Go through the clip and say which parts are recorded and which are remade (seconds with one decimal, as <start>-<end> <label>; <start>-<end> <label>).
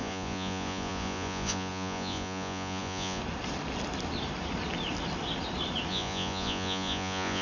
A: 0.0-3.2 remade; 3.2-5.9 recorded; 5.9-7.4 remade